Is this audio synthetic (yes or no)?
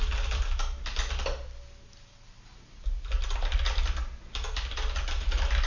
no